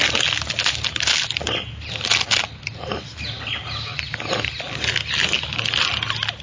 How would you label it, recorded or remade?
recorded